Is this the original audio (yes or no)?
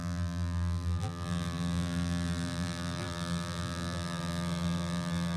no